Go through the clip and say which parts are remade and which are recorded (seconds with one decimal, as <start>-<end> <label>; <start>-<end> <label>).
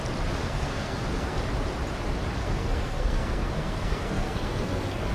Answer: 0.0-0.4 recorded; 0.4-1.4 remade; 1.4-2.4 recorded; 2.4-5.1 remade